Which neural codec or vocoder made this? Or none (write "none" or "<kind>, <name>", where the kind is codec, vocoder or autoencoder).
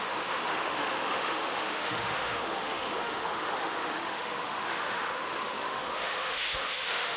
autoencoder, DAC-VAE